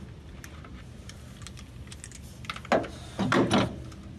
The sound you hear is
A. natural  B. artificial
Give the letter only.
A